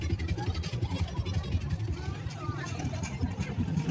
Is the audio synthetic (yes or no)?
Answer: no